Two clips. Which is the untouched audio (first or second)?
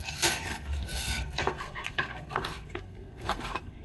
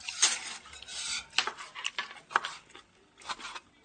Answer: second